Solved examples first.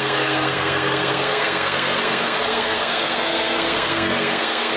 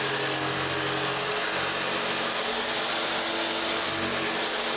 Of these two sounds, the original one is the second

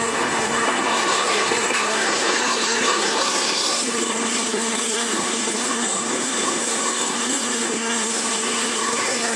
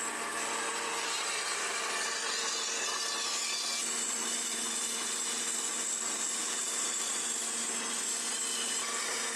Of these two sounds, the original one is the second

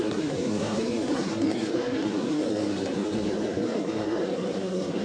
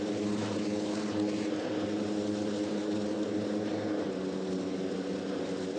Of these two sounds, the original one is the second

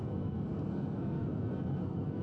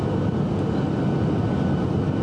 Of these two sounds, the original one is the second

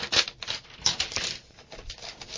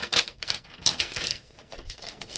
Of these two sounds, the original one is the first